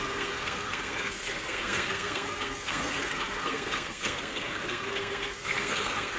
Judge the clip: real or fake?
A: fake